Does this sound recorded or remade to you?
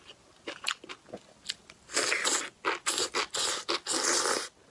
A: recorded